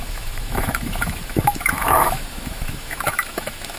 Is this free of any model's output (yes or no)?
no